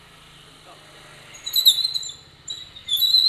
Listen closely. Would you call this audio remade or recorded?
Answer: recorded